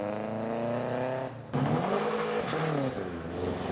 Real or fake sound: real